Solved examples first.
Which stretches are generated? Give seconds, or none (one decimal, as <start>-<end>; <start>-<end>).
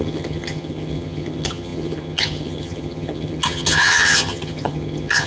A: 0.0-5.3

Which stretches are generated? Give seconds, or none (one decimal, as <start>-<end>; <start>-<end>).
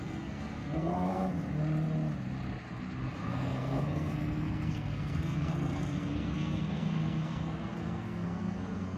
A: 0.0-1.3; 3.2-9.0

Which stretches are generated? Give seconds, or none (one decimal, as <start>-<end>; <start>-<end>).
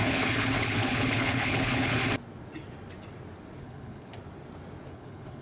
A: 0.0-2.0; 3.6-4.1; 4.9-5.4